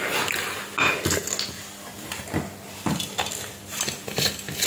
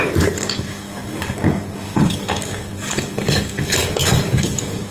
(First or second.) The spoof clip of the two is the second